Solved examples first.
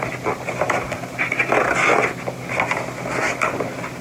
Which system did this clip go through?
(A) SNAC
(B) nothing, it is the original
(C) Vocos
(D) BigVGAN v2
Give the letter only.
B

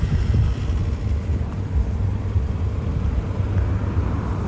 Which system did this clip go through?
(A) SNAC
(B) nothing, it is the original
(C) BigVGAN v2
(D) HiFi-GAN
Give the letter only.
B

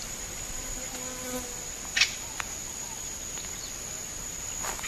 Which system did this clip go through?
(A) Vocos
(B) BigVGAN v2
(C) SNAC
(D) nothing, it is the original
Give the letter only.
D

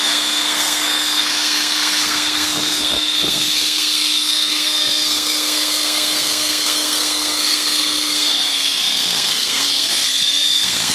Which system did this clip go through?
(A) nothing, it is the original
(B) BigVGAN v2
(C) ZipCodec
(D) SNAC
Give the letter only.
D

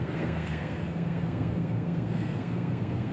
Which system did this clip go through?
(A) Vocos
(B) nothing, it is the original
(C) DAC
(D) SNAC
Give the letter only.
D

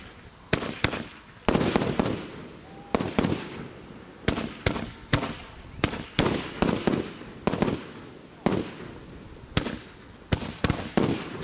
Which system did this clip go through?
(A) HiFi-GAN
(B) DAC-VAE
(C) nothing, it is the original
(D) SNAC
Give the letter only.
C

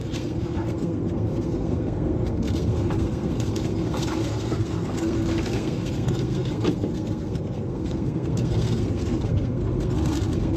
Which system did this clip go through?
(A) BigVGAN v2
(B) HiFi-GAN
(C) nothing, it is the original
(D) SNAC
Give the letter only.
D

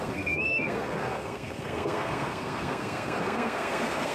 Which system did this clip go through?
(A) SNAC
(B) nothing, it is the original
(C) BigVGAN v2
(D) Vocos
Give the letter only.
A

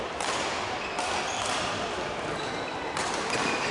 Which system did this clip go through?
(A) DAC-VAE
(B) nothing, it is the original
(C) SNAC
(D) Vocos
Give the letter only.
B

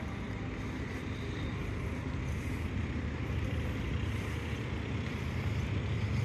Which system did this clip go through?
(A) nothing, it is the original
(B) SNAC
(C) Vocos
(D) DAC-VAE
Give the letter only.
A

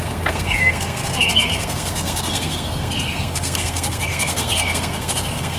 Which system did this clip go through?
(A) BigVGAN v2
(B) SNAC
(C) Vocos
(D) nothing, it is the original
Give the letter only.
B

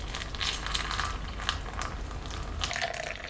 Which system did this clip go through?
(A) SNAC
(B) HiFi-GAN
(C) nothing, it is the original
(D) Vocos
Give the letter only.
C